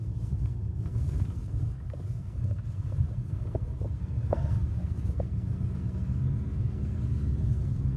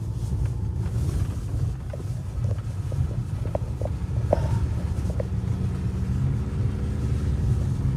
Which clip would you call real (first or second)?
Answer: second